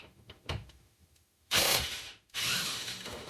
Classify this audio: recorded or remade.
remade